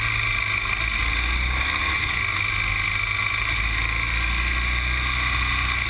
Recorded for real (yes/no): yes